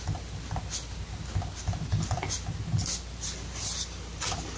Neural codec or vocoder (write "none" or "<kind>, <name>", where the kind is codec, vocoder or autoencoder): none